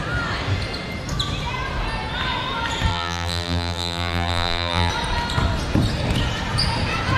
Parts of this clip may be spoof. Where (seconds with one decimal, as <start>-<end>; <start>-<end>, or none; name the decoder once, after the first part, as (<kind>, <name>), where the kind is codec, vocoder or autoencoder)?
2.9-4.9 (vocoder, BigVGAN v2)